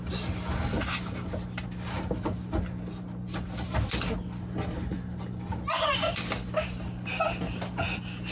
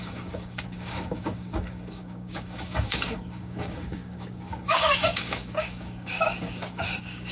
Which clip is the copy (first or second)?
second